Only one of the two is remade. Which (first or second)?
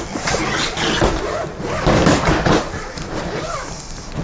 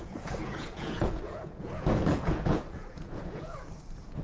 second